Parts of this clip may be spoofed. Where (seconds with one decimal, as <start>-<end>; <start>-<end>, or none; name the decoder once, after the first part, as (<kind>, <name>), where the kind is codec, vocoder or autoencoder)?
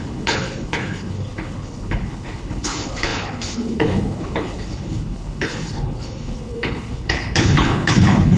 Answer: 0.0-8.4 (codec, HILCodec)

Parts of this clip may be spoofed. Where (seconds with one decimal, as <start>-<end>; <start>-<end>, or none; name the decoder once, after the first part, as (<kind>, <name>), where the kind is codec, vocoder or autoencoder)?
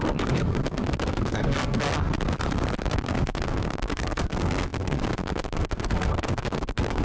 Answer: 0.0-1.8 (codec, SNAC); 2.9-7.0